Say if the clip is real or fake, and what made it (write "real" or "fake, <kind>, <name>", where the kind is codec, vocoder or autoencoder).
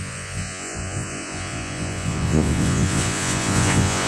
fake, vocoder, Vocos